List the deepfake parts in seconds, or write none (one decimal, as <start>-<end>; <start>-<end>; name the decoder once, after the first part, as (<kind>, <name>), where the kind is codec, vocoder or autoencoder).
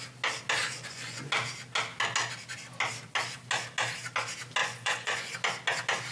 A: 0.6-1.3 (vocoder, Vocos); 4.6-5.3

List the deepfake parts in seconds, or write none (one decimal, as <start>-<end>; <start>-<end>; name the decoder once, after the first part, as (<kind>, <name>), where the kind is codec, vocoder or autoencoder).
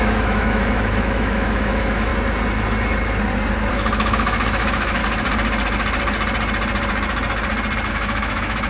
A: 0.0-2.1 (autoencoder, DAC-VAE); 3.7-5.0; 7.9-8.7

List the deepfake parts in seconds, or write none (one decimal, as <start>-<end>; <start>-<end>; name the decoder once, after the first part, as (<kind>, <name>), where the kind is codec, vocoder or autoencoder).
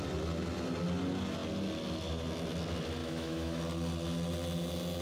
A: 3.0-3.6 (autoencoder, DAC-VAE)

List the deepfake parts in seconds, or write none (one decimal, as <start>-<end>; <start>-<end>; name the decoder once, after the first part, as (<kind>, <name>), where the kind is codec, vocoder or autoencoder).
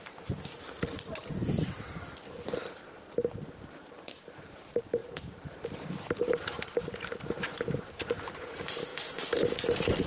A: 0.0-2.8 (vocoder, BigVGAN v2); 3.7-8.9; 9.6-10.1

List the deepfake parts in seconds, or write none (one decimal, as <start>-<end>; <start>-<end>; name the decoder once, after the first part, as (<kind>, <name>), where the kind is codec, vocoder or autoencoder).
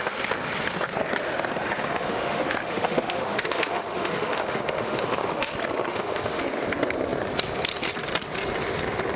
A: 1.9-5.5 (autoencoder, DAC-VAE); 5.9-6.4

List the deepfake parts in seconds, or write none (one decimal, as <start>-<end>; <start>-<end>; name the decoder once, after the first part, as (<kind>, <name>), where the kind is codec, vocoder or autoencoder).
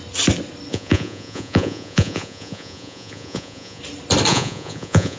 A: 0.7-3.8 (vocoder, Vocos); 4.3-5.2